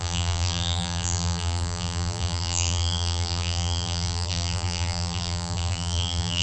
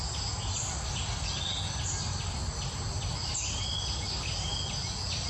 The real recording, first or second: second